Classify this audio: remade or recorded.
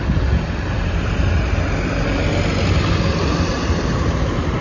recorded